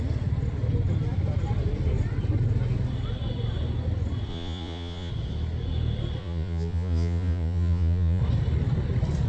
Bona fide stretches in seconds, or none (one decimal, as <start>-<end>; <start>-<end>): 0.0-4.3; 5.1-6.2; 8.2-9.3